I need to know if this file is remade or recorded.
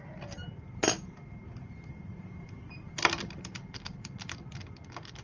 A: recorded